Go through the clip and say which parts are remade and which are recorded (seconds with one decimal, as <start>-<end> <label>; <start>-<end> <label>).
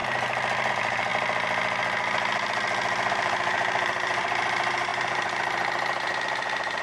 0.0-0.7 recorded; 0.7-1.1 remade; 1.1-3.1 recorded; 3.1-6.8 remade